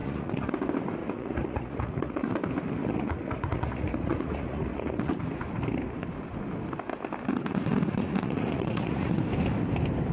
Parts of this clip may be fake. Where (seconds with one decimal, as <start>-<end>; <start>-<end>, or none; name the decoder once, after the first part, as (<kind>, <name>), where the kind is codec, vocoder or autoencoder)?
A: 0.0-0.5 (vocoder, Vocos); 1.0-2.3; 2.8-5.1; 7.3-9.2